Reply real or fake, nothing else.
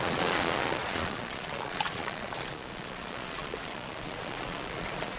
fake